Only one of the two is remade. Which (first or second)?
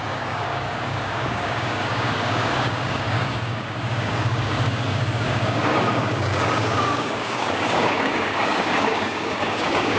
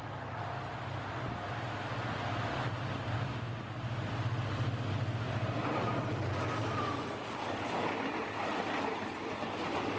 first